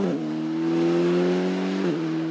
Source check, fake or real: real